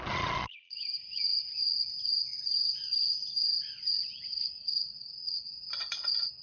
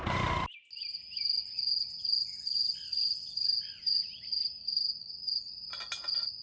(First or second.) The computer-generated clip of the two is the first